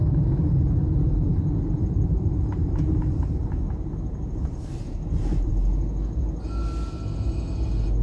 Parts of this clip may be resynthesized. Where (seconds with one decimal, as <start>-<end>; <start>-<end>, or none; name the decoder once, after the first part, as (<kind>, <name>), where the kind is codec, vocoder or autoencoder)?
1.3-3.4 (vocoder, BigVGAN v2); 4.4-5.5